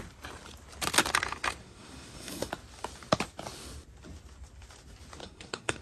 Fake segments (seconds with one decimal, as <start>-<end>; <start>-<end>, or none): 1.6-2.5; 5.2-5.8